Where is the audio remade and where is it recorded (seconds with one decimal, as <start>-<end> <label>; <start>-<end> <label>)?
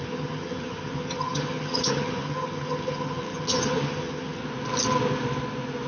0.0-4.4 remade; 4.4-5.9 recorded